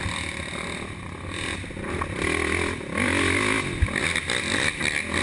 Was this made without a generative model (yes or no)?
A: yes